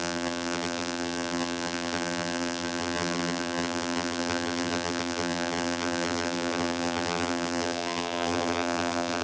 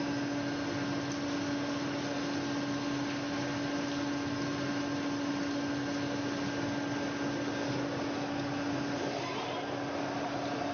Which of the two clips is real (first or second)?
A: second